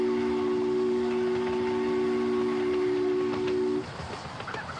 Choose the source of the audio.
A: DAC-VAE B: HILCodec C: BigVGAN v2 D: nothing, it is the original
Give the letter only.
D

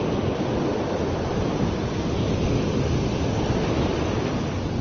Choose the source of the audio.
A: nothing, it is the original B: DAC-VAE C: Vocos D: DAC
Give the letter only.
A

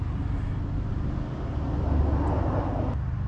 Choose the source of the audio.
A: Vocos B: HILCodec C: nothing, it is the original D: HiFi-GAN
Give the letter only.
C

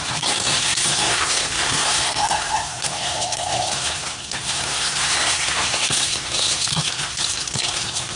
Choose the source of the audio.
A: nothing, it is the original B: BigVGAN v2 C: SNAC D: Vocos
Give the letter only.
C